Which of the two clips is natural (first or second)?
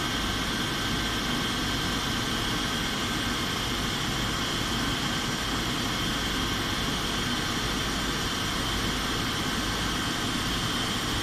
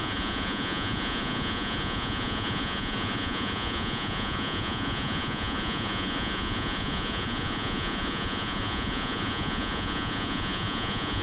first